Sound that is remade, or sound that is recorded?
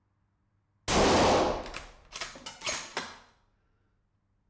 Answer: recorded